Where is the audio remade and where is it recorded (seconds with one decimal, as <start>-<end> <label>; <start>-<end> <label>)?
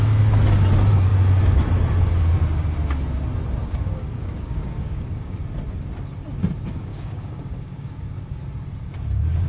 0.0-3.6 recorded; 3.6-5.4 remade; 5.4-6.9 recorded; 6.9-8.4 remade; 8.4-9.5 recorded